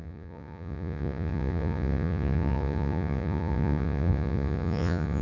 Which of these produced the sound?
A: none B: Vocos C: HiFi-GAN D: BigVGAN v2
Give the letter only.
B